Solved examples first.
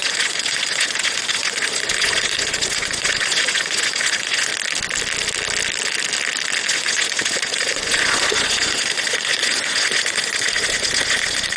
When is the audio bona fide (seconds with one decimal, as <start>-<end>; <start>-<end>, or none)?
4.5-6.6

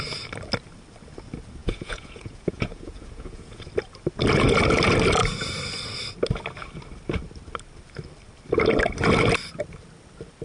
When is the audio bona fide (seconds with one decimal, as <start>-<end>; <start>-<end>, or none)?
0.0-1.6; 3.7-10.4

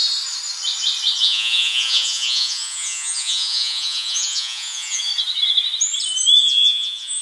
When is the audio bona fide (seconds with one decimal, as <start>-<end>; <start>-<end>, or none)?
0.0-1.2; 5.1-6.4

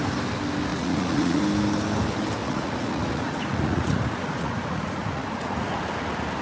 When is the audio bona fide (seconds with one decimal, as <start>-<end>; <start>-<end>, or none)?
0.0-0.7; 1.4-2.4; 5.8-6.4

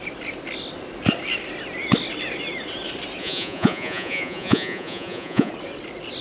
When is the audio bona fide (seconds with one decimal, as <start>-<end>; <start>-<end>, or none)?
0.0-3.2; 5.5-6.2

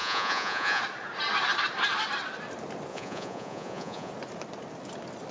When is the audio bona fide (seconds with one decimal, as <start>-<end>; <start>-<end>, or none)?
0.8-2.9; 4.1-5.3